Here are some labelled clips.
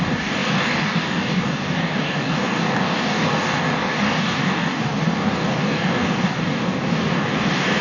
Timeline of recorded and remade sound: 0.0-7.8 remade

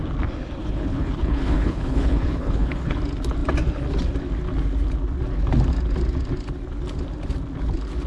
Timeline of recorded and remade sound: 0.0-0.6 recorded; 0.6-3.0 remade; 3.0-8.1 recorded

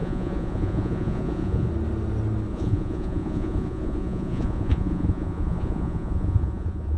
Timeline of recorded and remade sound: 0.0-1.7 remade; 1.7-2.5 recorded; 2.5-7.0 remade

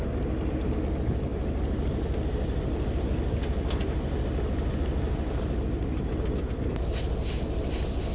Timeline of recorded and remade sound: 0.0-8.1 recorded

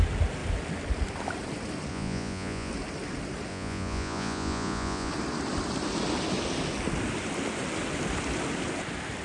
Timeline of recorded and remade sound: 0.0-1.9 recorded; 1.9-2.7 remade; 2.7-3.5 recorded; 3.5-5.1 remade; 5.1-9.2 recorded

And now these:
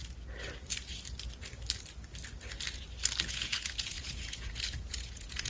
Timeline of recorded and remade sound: 0.0-3.3 recorded; 3.3-5.5 remade